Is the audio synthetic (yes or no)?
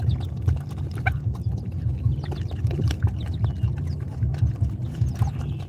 no